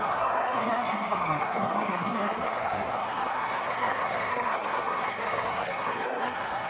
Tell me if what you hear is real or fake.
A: fake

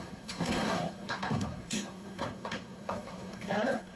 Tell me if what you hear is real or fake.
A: fake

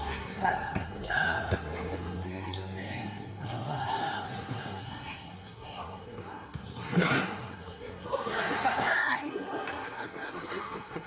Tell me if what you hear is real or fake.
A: fake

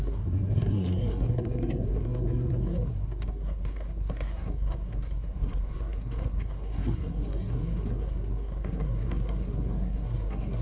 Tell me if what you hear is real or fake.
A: fake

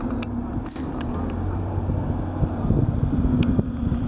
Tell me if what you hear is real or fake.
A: real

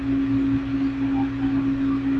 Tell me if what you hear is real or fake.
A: real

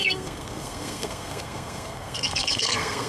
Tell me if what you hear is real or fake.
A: fake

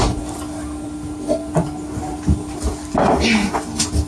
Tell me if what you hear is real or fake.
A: real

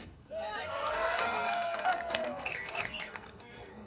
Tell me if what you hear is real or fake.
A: fake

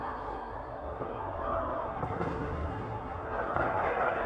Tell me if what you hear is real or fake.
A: fake